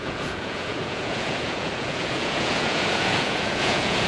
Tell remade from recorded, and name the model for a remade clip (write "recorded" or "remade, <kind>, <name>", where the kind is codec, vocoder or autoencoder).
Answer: remade, vocoder, Vocos